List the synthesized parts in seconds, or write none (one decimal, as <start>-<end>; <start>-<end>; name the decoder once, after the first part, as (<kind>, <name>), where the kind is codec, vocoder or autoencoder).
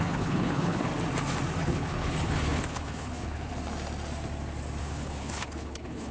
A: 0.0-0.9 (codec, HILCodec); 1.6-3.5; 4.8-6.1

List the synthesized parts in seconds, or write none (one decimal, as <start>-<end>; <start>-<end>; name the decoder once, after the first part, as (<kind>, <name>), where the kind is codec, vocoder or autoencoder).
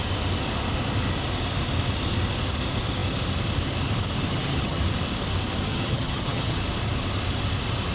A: 4.3-4.8 (vocoder, HiFi-GAN); 5.7-6.6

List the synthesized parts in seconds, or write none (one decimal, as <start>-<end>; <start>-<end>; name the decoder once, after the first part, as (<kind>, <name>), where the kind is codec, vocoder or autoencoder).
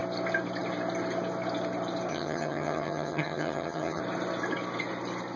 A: 2.1-4.0 (vocoder, HiFi-GAN)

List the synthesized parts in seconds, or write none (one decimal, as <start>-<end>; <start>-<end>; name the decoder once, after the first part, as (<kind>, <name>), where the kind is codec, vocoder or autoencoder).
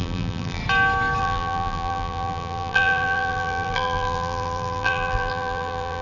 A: 0.0-0.6 (vocoder, BigVGAN v2); 1.2-6.0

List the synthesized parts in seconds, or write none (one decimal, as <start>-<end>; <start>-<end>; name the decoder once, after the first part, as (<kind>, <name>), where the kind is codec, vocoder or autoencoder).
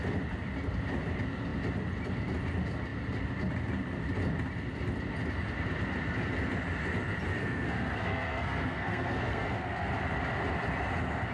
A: 7.4-9.9 (codec, SNAC)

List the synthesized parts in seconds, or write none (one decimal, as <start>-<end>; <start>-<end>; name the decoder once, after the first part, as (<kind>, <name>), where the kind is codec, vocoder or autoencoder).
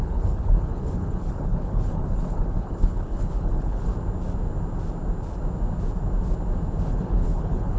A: 0.0-3.9 (codec, HILCodec); 6.9-7.8